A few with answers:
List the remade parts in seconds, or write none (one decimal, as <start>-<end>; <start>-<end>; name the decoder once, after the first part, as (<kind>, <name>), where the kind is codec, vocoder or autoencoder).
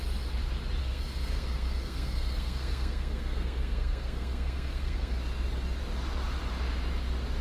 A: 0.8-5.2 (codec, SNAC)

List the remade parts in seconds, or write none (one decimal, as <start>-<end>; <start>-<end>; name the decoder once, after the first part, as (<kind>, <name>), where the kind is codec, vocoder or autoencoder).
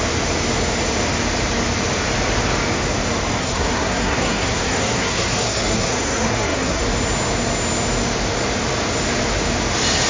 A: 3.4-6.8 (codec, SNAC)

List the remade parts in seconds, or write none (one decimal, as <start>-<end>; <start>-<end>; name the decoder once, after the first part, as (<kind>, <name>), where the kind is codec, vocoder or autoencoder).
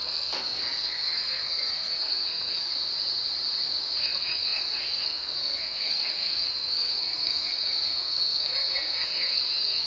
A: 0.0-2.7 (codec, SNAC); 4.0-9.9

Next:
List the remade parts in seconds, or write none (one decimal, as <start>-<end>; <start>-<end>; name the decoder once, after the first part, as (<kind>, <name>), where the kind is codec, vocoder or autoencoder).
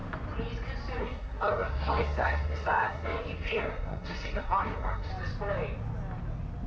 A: 1.0-5.1 (codec, SNAC)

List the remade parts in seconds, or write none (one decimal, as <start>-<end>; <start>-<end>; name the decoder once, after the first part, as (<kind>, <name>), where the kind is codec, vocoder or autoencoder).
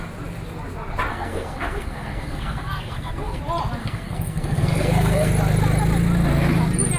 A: 1.1-3.4 (codec, SNAC); 3.8-5.3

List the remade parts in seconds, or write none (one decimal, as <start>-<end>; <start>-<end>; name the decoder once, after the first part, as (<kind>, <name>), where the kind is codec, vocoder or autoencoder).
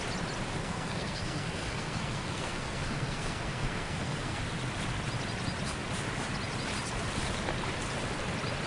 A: 0.6-4.4 (codec, SNAC)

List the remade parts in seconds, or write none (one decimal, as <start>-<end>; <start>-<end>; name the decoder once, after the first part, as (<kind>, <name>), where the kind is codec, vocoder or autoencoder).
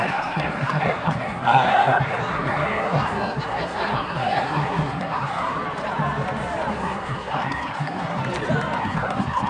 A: 0.0-5.6 (codec, SNAC); 6.7-8.2; 8.8-9.5